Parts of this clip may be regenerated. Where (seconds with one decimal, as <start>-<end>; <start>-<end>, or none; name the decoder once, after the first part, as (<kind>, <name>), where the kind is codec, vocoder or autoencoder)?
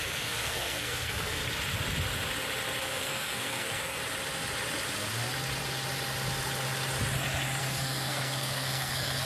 0.0-1.4 (codec, SNAC); 2.8-4.0; 7.6-9.3